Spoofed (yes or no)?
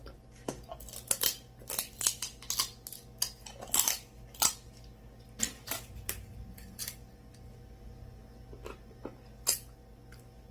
no